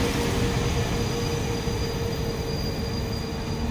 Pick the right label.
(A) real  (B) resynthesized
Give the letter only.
A